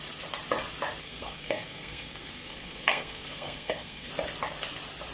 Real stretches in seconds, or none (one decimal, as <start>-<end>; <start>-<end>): 0.0-1.0; 4.1-5.1